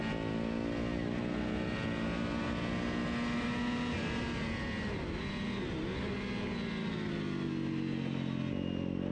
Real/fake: real